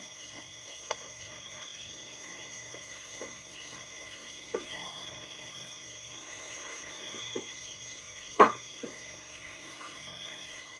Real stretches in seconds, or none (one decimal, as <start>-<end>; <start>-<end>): none